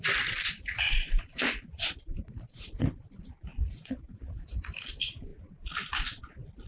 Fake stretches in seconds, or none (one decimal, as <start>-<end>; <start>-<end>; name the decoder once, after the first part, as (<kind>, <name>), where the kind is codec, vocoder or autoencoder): 0.0-5.3 (vocoder, BigVGAN v2); 6.2-6.7